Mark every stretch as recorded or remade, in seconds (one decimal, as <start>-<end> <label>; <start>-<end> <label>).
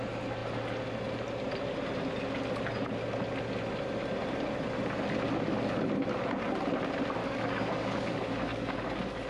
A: 0.0-7.2 recorded; 7.2-8.9 remade; 8.9-9.3 recorded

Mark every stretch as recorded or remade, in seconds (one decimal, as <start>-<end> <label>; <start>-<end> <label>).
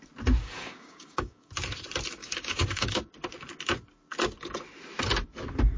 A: 0.0-0.4 recorded; 0.4-1.5 remade; 1.5-2.2 recorded; 2.2-3.1 remade; 3.1-5.8 recorded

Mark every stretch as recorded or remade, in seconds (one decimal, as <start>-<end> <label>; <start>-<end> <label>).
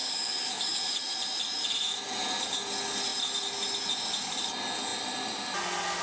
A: 0.0-0.8 remade; 0.8-6.0 recorded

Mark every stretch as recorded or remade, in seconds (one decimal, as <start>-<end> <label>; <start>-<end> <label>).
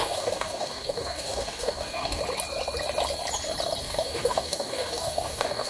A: 0.0-2.2 remade; 2.2-3.8 recorded; 3.8-5.7 remade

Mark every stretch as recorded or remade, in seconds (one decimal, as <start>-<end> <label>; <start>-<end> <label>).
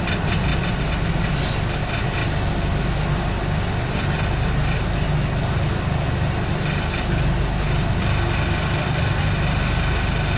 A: 0.0-10.4 recorded